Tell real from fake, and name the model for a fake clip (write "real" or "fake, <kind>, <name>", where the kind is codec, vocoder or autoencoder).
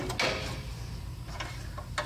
real